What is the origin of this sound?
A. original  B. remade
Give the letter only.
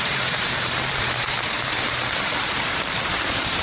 B